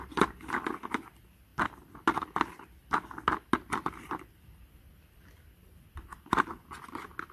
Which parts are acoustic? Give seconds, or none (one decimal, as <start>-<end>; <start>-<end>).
0.0-7.3